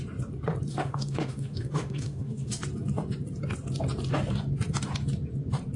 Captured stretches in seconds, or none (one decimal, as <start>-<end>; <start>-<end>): 0.0-0.7; 2.5-5.8